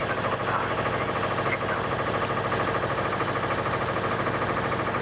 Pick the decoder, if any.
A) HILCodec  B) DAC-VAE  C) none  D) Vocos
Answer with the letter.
C